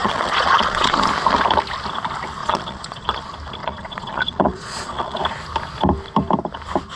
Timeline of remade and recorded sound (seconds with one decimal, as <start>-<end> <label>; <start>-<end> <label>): 0.0-1.0 remade; 1.0-2.4 recorded; 2.4-3.2 remade; 3.2-3.6 recorded; 3.6-5.2 remade; 5.2-7.0 recorded